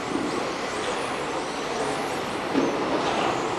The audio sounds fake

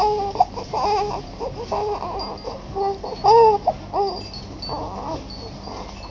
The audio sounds real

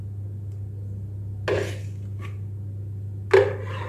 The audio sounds real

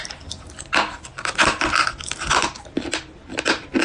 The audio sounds real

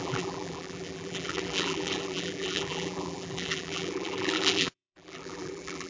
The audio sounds fake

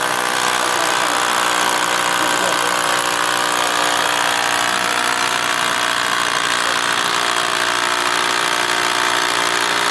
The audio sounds real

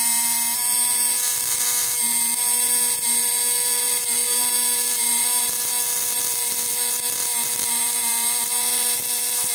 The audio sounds fake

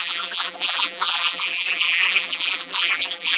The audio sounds fake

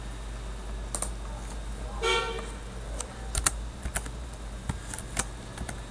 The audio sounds real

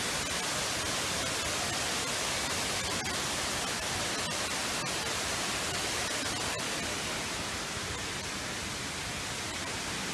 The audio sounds real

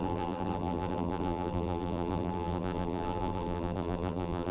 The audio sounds fake